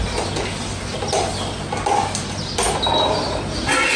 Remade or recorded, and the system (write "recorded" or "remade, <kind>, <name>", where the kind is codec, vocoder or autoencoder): recorded